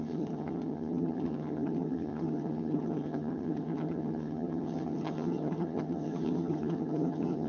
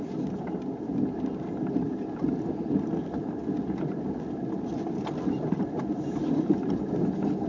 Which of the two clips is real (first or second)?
second